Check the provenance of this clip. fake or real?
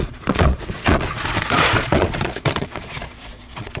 fake